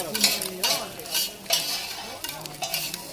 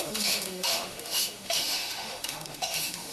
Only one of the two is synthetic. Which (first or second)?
second